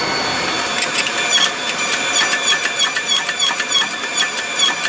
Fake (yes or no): yes